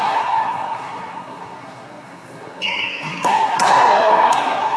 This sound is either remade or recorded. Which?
remade